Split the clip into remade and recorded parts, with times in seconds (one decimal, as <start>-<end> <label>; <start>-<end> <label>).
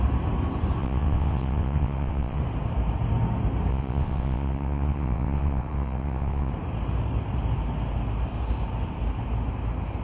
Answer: 0.0-0.8 recorded; 0.8-2.4 remade; 2.4-3.7 recorded; 3.7-6.5 remade; 6.5-10.0 recorded